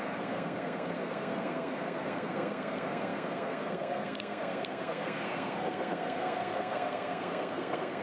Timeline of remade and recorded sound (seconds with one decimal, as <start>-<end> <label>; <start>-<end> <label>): 0.0-8.0 remade